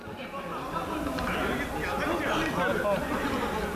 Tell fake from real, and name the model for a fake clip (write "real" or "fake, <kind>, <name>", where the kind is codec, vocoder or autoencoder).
real